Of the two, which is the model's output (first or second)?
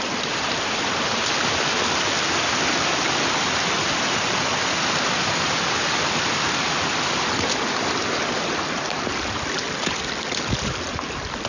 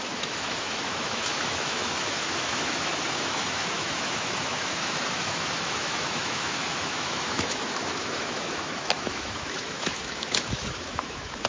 second